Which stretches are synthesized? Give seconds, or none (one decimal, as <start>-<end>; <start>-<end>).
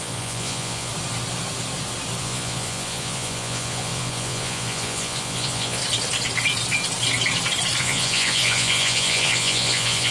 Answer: 0.0-0.9; 2.2-5.8; 7.8-10.1